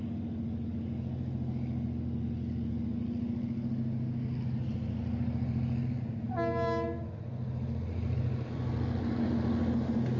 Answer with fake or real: real